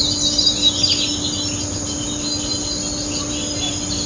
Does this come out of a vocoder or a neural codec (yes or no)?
no